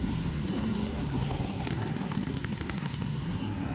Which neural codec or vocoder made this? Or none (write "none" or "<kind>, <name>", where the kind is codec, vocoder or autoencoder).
codec, SNAC